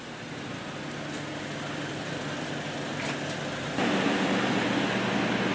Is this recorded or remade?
recorded